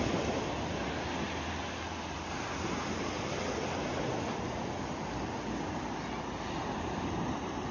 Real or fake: real